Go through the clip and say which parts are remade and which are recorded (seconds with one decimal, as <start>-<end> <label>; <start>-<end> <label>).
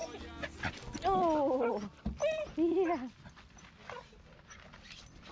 0.0-5.3 recorded